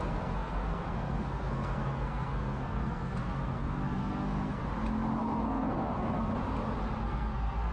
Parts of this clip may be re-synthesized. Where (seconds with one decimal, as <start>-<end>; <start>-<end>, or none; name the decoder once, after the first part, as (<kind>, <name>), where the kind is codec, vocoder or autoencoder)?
0.0-4.6 (codec, SNAC); 5.2-6.3; 7.0-7.7